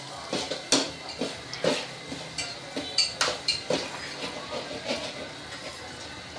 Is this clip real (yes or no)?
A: yes